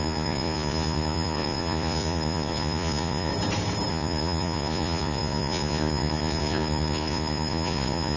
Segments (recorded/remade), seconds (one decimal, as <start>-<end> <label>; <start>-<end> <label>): 0.0-3.3 remade; 3.3-3.9 recorded; 3.9-8.2 remade